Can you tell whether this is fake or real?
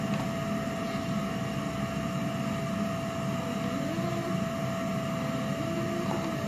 real